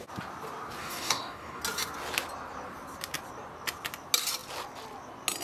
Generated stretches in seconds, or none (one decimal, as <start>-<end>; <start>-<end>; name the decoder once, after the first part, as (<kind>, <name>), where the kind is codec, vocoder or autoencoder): 0.8-1.6 (codec, DAC)